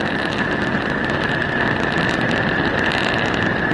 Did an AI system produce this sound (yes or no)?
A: no